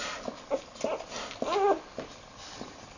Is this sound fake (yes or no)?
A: no